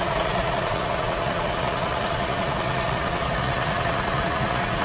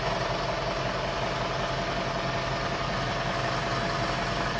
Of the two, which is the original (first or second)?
second